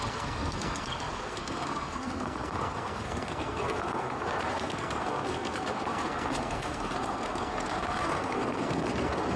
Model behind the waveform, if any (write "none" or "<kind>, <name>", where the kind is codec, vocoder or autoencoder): codec, SNAC